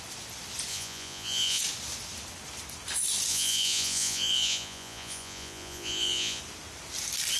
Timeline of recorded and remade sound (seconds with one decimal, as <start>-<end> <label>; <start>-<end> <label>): 0.0-0.7 recorded; 0.7-1.6 remade; 1.6-3.3 recorded; 3.3-6.4 remade; 6.4-7.4 recorded